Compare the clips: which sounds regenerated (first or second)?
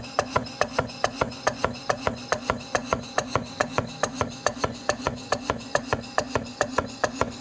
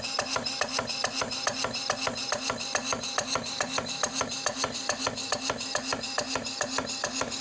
first